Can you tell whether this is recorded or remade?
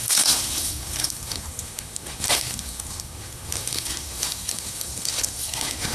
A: remade